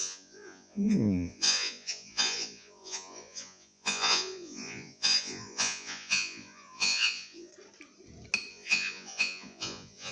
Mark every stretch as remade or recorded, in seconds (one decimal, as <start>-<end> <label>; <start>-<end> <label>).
0.0-7.5 remade; 7.5-8.5 recorded; 8.5-10.1 remade